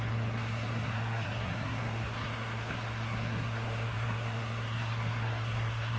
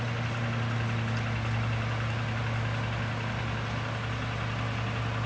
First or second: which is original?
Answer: second